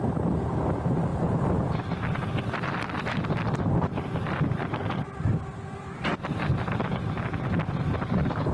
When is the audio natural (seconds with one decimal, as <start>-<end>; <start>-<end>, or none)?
0.0-1.1; 4.8-8.5